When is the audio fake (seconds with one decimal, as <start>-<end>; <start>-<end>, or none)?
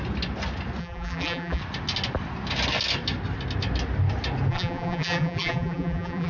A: 0.8-1.6; 4.5-6.3